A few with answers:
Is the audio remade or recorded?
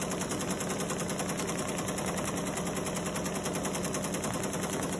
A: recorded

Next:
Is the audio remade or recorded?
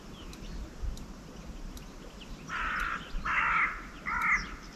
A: remade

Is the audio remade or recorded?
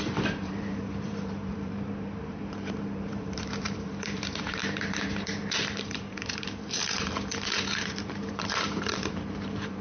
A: remade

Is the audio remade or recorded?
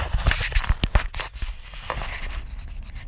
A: recorded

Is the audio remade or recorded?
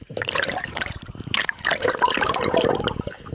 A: remade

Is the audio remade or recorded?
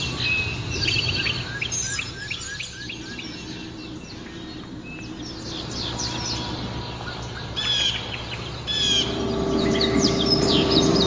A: recorded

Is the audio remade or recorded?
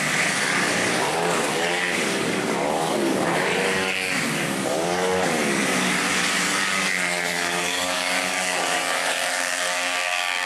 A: remade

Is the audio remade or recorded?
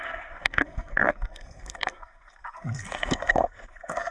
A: remade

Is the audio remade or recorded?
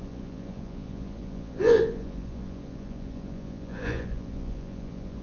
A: remade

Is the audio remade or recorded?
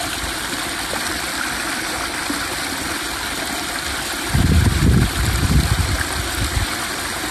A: remade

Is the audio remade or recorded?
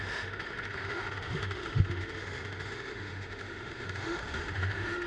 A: remade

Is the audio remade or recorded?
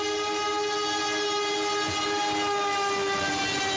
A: recorded